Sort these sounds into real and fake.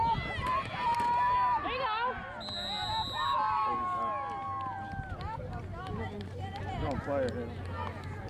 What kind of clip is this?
real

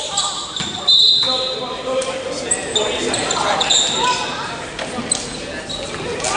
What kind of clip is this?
real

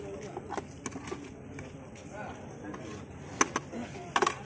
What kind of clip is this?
real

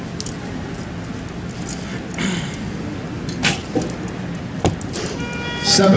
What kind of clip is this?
real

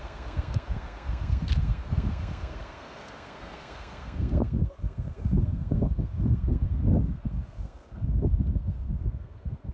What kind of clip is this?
fake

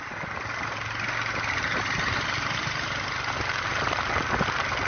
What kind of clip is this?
real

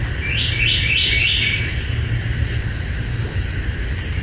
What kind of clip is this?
real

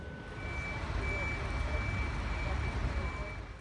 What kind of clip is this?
real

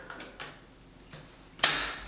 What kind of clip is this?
real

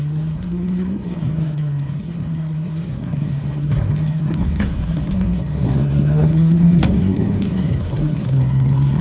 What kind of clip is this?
fake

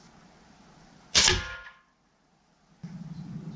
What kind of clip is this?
real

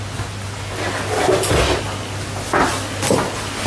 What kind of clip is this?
real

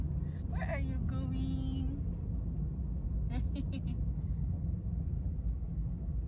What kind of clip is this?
real